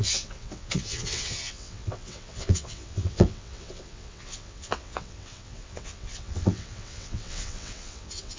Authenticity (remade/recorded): remade